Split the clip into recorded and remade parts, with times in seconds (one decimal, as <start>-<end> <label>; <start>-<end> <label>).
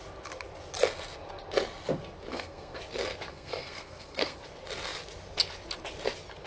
0.0-2.3 recorded; 2.3-2.8 remade; 2.8-3.3 recorded; 3.3-4.4 remade; 4.4-6.5 recorded